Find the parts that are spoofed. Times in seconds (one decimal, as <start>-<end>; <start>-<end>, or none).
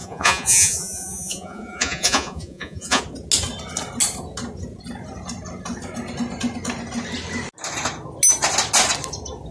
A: 0.0-3.0